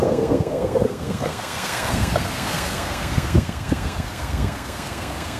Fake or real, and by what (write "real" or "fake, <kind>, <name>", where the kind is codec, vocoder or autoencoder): fake, codec, SNAC